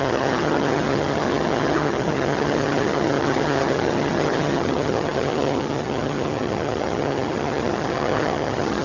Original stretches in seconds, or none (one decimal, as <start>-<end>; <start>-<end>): none